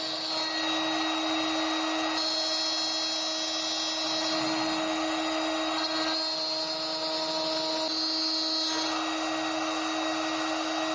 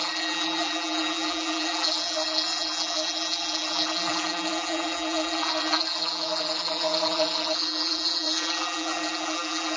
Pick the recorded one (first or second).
first